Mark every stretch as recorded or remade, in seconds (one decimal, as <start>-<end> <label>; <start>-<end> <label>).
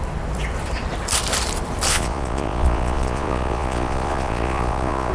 0.0-1.9 recorded; 1.9-5.1 remade